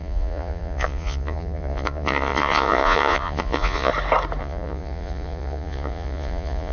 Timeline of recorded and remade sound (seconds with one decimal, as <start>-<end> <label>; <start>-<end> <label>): 0.0-3.9 remade; 3.9-4.4 recorded; 4.4-6.7 remade